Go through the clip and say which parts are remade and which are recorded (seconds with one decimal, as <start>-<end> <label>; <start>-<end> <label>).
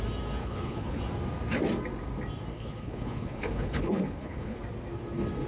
0.0-0.4 recorded; 0.4-1.0 remade; 1.0-2.5 recorded; 2.5-4.6 remade; 4.6-5.5 recorded